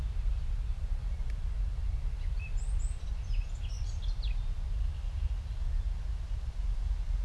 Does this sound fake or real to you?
real